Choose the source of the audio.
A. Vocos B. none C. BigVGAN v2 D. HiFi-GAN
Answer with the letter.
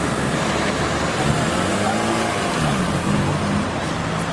B